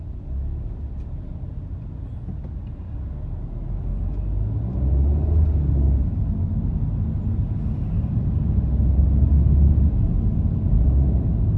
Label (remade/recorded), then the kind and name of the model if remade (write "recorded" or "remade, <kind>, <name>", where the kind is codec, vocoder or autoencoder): recorded